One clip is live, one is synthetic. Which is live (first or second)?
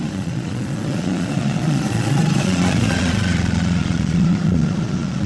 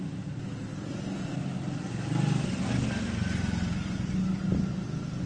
second